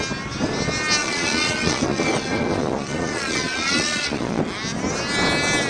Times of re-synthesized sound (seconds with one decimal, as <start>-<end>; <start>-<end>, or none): 1.0-4.4